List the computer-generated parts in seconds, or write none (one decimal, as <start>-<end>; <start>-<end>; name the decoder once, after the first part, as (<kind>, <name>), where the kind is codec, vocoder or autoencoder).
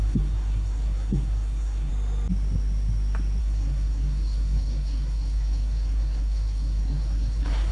0.0-1.9 (codec, SNAC); 3.4-7.7